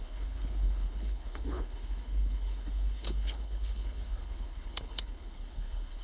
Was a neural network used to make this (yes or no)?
yes